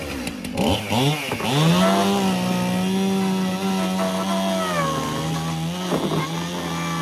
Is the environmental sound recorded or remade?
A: recorded